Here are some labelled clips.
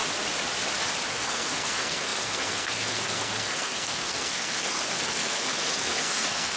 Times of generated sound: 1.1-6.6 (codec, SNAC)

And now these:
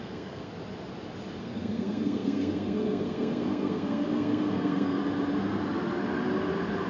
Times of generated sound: 0.0-0.5 (codec, SNAC); 1.4-5.0

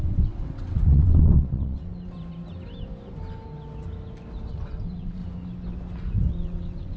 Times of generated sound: 0.0-1.9 (vocoder, WaveNeXt); 4.5-5.2; 6.3-7.0

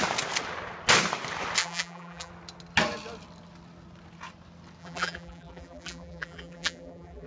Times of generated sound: 1.6-2.3 (vocoder, BigVGAN v2); 4.8-7.3

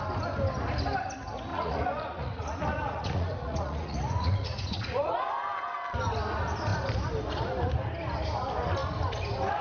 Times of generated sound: 1.5-5.2 (vocoder, Vocos)

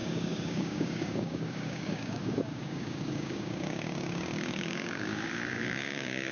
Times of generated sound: 0.0-6.3 (codec, DAC)

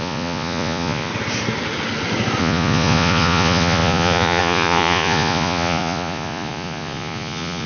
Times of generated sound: 0.0-1.1 (vocoder, Vocos); 2.4-7.7

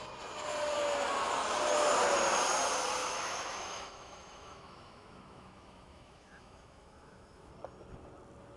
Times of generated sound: 3.0-7.5 (autoencoder, DAC-VAE)